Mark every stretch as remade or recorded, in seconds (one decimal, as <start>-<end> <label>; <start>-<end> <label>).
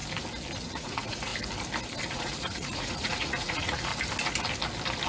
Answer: 0.0-0.7 recorded; 0.7-1.3 remade; 1.3-2.1 recorded; 2.1-3.9 remade; 3.9-5.1 recorded